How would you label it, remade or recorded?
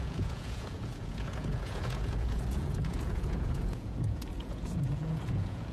remade